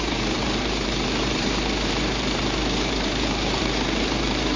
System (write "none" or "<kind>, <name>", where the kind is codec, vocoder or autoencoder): vocoder, BigVGAN v2